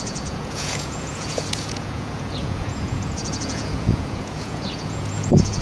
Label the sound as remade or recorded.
remade